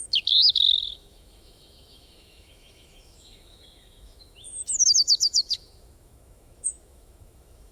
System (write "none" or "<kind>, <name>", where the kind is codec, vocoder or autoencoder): autoencoder, DAC-VAE